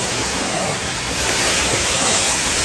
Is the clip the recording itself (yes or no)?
no